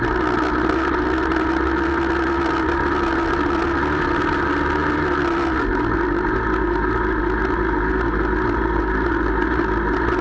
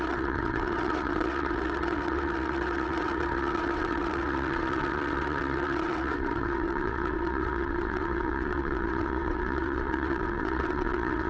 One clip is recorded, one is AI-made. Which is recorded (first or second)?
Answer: first